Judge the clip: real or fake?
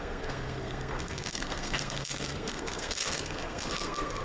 fake